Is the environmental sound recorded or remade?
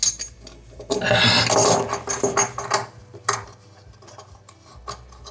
recorded